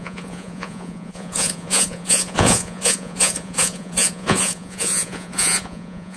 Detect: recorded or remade remade